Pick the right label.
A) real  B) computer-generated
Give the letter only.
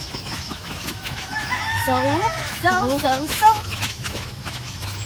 B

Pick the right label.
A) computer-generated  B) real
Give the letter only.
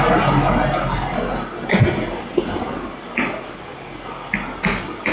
B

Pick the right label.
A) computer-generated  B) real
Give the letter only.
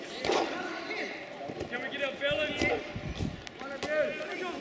B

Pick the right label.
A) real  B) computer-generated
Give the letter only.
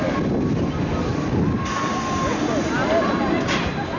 A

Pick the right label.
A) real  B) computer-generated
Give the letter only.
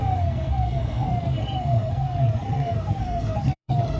B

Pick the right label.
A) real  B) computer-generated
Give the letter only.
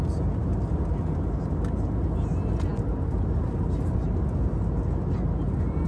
A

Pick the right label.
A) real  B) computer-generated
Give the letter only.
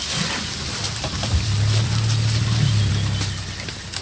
B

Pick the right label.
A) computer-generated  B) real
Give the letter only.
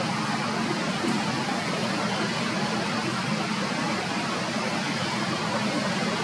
B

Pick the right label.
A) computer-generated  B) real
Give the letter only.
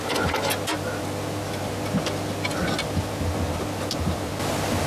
B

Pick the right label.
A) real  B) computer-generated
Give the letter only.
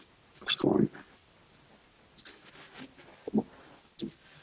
A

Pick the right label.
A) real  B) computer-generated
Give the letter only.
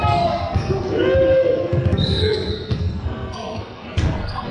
B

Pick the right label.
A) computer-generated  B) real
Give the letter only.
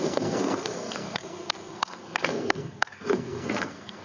A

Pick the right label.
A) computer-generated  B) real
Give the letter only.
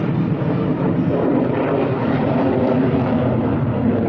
B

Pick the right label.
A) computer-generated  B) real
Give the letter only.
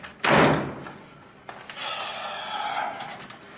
B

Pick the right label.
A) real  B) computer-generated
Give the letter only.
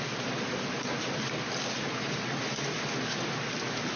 A